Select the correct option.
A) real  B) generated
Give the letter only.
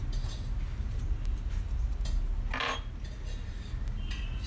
A